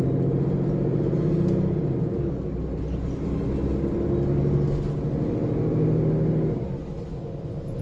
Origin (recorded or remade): recorded